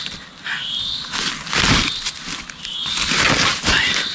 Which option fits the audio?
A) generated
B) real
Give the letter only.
B